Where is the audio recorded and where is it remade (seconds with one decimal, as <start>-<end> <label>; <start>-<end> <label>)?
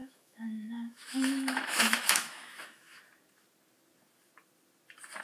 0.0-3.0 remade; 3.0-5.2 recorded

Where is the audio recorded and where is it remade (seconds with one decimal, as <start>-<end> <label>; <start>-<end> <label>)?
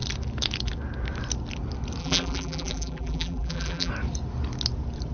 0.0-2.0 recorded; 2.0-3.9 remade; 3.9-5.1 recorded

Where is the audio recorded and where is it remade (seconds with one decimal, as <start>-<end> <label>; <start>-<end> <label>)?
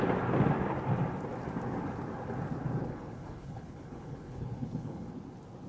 0.0-2.8 recorded; 2.8-5.1 remade; 5.1-5.7 recorded